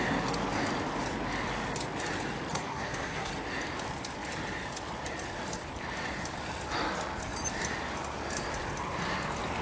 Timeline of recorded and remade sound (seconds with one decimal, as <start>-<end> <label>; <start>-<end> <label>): 0.0-2.5 recorded; 2.5-3.3 remade; 3.3-9.6 recorded